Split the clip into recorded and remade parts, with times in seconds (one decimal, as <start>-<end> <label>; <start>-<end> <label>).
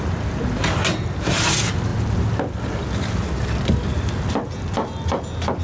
0.0-5.6 recorded